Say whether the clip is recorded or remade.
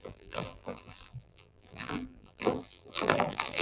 remade